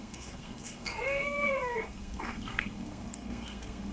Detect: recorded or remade remade